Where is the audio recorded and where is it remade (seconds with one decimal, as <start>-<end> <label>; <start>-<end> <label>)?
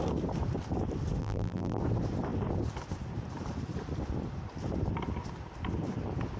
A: 0.0-1.2 recorded; 1.2-1.8 remade; 1.8-6.4 recorded